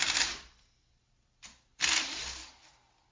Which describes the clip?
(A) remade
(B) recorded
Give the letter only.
B